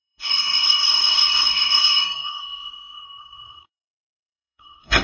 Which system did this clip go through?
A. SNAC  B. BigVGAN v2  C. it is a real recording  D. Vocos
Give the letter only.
A